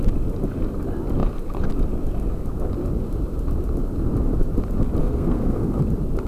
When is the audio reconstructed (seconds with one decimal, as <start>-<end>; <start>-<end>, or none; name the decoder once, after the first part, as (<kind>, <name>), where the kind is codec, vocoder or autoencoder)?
5.0-5.8 (codec, SNAC)